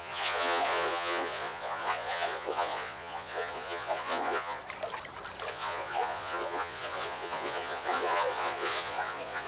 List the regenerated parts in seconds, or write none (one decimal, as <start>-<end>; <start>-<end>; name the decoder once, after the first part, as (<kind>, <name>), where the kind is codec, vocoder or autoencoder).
0.0-4.6 (vocoder, Vocos); 5.5-9.5